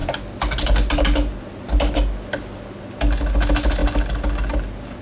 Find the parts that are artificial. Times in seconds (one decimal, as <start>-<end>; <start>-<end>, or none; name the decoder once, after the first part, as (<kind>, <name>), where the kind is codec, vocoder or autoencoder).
none